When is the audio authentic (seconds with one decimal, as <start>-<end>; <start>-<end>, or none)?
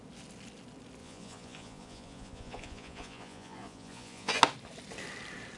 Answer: 0.0-1.0; 4.4-5.6